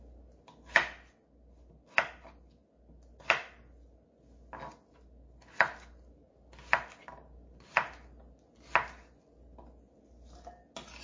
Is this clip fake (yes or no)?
no